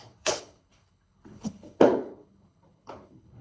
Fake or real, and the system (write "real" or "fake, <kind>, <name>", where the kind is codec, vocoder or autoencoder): fake, codec, HILCodec